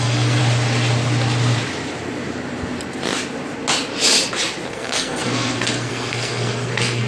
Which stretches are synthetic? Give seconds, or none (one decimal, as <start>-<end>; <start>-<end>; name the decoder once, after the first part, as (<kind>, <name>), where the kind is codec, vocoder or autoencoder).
0.0-0.4 (codec, SNAC); 4.7-7.1